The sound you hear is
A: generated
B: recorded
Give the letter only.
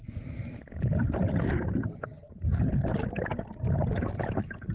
B